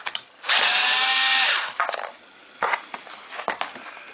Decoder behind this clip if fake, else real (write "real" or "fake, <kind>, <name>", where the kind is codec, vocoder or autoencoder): real